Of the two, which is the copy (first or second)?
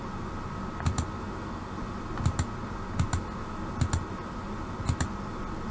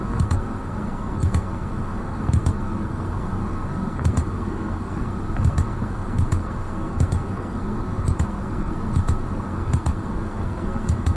second